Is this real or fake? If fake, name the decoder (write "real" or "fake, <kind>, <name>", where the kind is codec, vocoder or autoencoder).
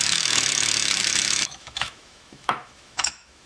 fake, autoencoder, DAC-VAE